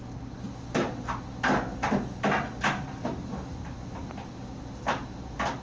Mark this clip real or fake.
real